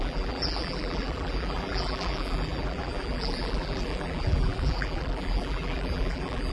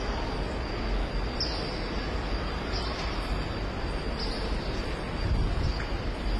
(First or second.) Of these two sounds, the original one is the second